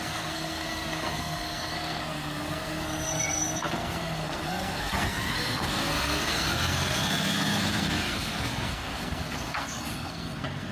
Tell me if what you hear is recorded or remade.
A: remade